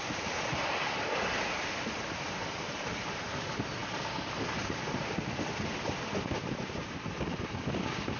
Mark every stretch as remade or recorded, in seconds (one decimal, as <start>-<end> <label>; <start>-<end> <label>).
0.0-8.2 recorded